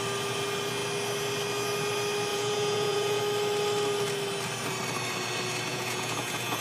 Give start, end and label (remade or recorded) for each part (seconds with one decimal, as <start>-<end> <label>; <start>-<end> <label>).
0.0-2.3 recorded; 2.3-3.2 remade; 3.2-5.7 recorded; 5.7-6.6 remade